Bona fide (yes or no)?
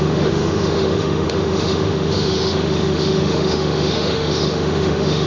no